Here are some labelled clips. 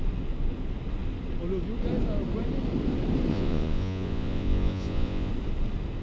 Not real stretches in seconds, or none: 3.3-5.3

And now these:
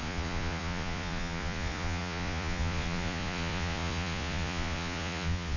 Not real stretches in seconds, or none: 0.0-5.6

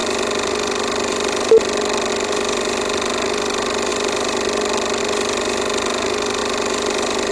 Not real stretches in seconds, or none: none